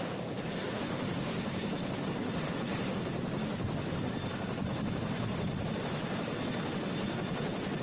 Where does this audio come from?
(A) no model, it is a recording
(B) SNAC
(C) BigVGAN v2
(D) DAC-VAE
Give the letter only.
A